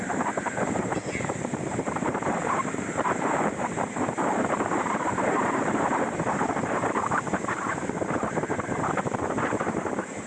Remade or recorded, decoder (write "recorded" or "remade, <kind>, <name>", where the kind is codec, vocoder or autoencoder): remade, vocoder, BigVGAN v2